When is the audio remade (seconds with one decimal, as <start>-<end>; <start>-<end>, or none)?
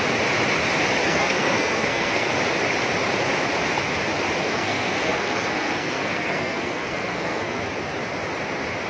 1.0-2.3; 4.4-7.6